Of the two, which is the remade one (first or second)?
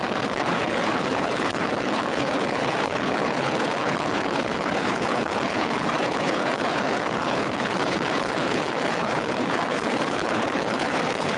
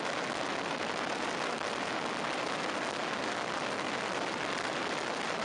first